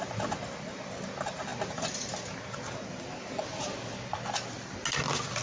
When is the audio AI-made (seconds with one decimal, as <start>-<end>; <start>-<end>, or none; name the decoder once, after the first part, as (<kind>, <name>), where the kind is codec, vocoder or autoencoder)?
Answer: none